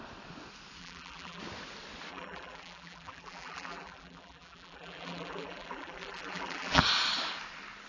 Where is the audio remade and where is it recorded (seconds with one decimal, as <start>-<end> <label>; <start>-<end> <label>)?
0.0-0.8 recorded; 0.8-1.4 remade; 1.4-2.1 recorded; 2.1-6.8 remade; 6.8-7.9 recorded